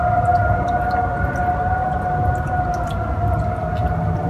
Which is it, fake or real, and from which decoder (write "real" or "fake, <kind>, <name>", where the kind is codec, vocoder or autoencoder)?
real